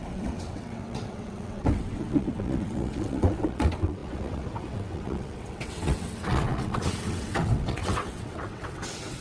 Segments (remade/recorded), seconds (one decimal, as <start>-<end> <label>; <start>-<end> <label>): 0.0-9.2 remade